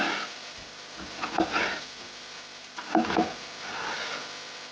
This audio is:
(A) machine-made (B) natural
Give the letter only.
B